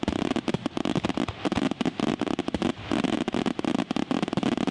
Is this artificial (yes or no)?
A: no